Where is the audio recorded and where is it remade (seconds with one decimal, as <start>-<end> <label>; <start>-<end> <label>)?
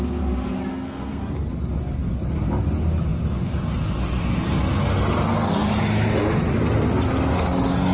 0.0-0.7 recorded; 0.7-1.2 remade; 1.2-7.9 recorded